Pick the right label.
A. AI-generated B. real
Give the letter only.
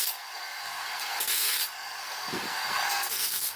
A